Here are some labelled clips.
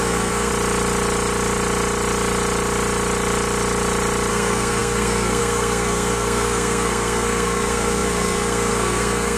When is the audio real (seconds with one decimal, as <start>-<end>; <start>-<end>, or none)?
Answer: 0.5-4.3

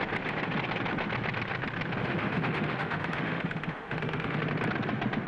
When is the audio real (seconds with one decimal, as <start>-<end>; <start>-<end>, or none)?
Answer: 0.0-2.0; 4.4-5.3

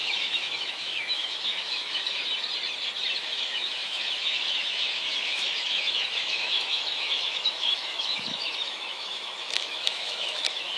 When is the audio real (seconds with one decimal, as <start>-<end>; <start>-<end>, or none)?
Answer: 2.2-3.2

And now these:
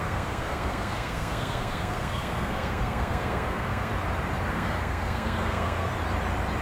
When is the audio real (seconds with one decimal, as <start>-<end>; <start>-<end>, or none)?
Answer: 3.9-4.5; 5.9-6.6